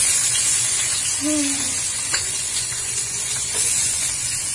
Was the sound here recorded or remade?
remade